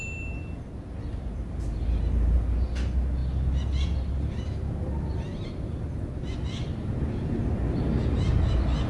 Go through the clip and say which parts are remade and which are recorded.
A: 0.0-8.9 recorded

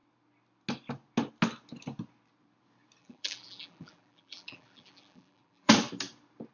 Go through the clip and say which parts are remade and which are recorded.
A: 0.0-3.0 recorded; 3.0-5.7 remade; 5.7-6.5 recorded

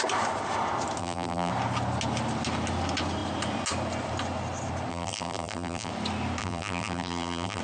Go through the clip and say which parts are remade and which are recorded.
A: 0.0-1.0 recorded; 1.0-1.5 remade; 1.5-4.9 recorded; 4.9-5.9 remade; 5.9-6.4 recorded; 6.4-7.6 remade

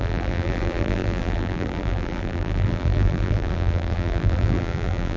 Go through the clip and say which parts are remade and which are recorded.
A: 0.0-5.2 remade